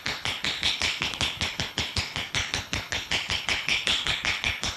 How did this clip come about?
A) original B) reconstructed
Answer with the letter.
B